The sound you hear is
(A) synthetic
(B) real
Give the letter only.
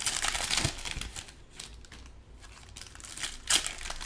B